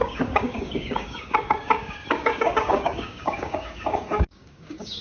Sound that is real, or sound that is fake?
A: fake